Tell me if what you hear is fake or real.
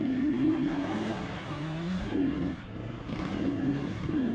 fake